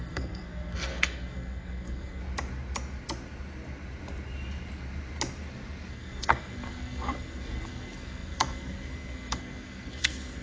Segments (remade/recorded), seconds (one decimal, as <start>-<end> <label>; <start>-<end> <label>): 0.0-2.2 remade; 2.2-5.9 recorded; 5.9-10.4 remade